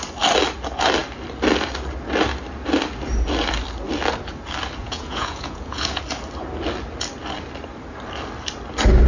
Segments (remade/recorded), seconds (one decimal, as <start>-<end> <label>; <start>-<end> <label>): 0.0-4.8 recorded; 4.8-6.0 remade; 6.0-9.1 recorded